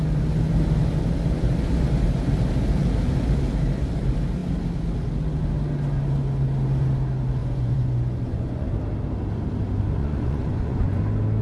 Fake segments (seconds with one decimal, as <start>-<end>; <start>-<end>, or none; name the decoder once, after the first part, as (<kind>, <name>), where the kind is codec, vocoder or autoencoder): 7.4-8.7 (vocoder, Vocos); 10.0-11.0